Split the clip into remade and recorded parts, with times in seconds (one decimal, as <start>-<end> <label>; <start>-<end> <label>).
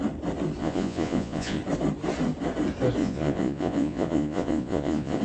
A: 0.0-0.6 recorded; 0.6-1.6 remade; 1.6-3.0 recorded; 3.0-5.2 remade